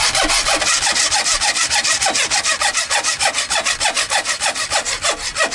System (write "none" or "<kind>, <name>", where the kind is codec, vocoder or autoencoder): none